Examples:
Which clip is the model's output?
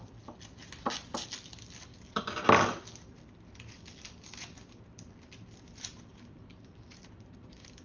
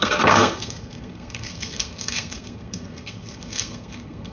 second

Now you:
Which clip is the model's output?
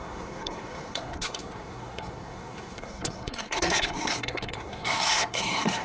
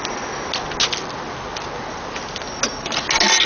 first